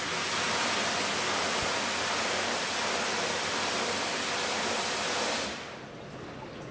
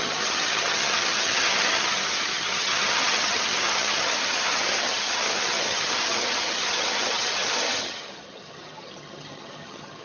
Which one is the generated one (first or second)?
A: second